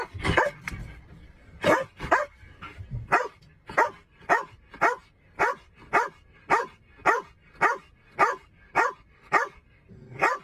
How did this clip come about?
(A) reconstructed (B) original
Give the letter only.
B